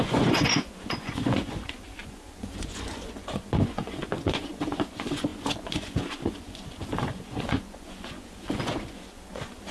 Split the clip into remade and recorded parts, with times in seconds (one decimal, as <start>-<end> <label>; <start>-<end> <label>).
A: 0.0-9.7 remade